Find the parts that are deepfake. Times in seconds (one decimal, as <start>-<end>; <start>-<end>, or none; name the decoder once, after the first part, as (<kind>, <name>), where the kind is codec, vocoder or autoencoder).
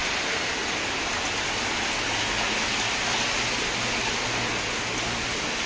none